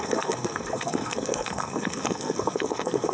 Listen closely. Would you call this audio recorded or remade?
remade